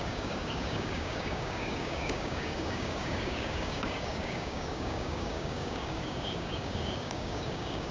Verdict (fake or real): fake